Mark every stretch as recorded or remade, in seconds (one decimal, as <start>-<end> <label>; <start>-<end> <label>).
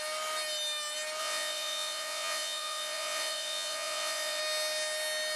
0.0-1.2 recorded; 1.2-4.4 remade; 4.4-5.4 recorded